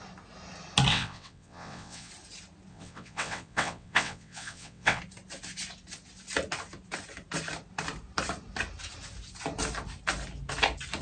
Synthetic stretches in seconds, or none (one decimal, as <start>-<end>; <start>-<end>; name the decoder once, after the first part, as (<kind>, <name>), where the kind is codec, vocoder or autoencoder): 0.9-2.1 (vocoder, WaveNeXt); 2.7-5.0